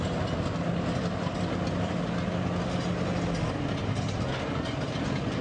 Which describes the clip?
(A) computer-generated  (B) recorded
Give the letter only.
B